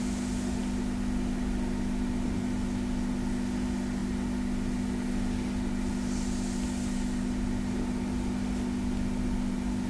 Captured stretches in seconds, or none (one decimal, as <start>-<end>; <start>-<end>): 0.0-9.9